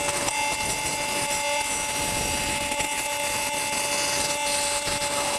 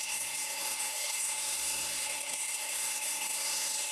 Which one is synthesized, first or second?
second